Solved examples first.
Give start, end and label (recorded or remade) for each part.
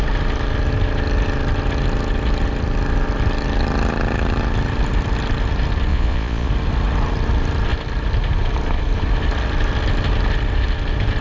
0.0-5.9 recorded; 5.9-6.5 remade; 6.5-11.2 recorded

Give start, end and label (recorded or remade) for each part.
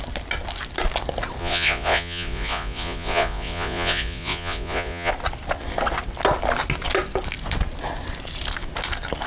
0.0-1.4 recorded; 1.4-5.1 remade; 5.1-9.3 recorded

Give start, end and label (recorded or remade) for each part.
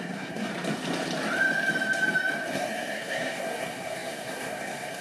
0.0-0.5 remade; 0.5-2.5 recorded; 2.5-5.0 remade